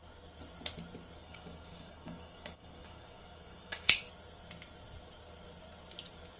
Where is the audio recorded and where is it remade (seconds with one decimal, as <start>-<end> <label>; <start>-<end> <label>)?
0.0-1.2 recorded; 1.2-4.1 remade; 4.1-6.4 recorded